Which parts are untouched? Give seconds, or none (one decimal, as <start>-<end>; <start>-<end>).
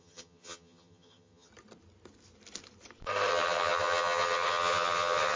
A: 1.5-3.3